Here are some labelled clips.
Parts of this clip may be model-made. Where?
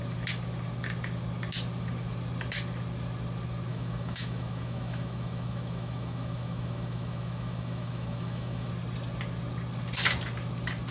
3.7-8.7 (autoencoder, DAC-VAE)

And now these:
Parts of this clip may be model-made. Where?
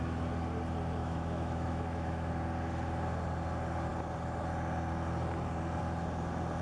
1.0-2.3 (autoencoder, DAC-VAE)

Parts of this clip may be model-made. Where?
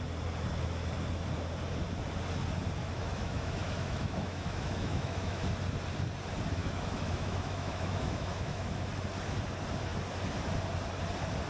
2.8-5.5 (autoencoder, DAC-VAE); 6.6-8.9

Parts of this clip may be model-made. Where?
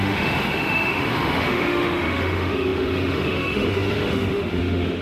0.0-5.0 (autoencoder, DAC-VAE)